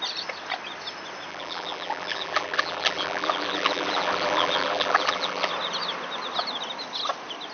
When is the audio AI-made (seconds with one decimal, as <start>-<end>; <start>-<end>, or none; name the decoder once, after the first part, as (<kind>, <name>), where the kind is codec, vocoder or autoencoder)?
1.3-5.5 (vocoder, BigVGAN v2)